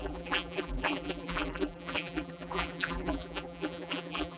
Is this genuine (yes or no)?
no